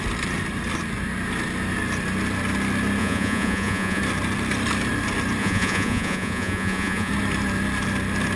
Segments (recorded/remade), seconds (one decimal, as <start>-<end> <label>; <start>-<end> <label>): 0.0-3.0 recorded; 3.0-4.0 remade; 4.0-5.4 recorded; 5.4-7.1 remade; 7.1-8.4 recorded